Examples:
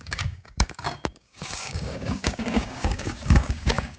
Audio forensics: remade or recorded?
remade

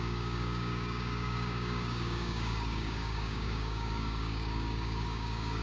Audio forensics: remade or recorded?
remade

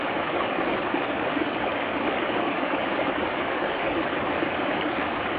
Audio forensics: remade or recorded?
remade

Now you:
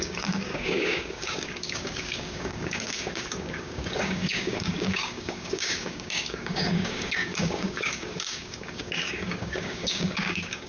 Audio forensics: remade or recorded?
remade